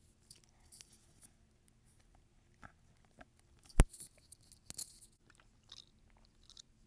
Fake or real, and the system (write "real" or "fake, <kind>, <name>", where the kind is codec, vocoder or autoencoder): real